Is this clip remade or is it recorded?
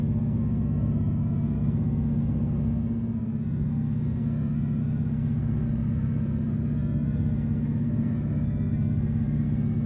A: remade